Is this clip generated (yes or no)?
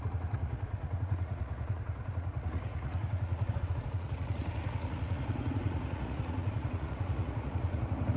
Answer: yes